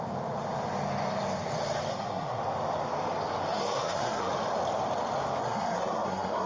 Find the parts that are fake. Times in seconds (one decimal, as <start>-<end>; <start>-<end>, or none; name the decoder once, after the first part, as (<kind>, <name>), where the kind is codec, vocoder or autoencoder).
1.9-2.4 (codec, SNAC); 3.5-4.3; 5.4-6.5